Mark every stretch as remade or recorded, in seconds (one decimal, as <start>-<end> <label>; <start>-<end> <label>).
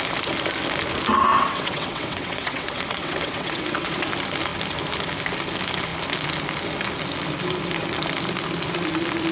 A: 0.0-1.3 recorded; 1.3-4.0 remade; 4.0-9.3 recorded